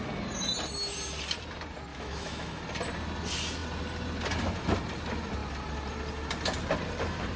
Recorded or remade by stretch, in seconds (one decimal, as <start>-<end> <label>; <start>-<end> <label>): 0.0-1.9 recorded; 1.9-2.6 remade; 2.6-7.4 recorded